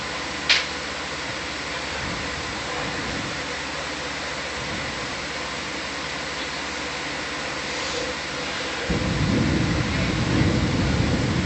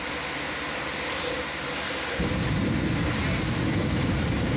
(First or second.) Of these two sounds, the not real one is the second